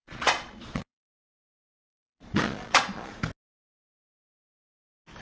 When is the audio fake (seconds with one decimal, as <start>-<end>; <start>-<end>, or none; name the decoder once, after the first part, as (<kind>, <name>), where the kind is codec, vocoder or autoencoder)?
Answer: 0.0-3.1 (vocoder, Vocos)